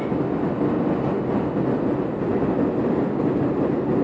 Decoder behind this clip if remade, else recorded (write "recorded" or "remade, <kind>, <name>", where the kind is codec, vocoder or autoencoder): recorded